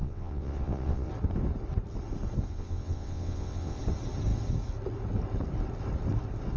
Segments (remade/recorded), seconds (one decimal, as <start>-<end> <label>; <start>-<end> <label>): 0.0-1.1 remade; 1.1-2.5 recorded; 2.5-3.8 remade; 3.8-6.6 recorded